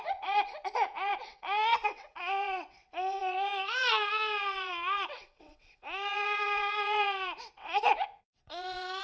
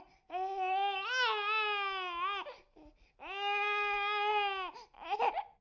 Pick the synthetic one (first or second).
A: first